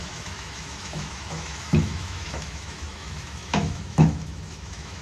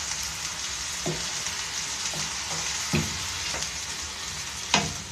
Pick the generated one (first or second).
first